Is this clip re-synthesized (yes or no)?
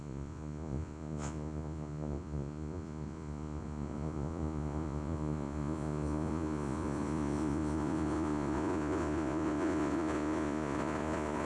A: yes